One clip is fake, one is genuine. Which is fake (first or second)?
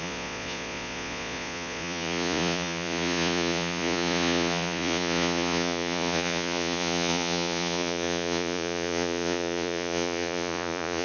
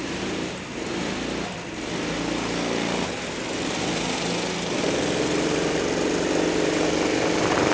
first